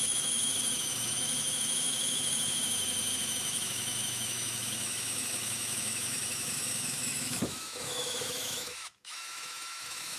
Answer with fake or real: fake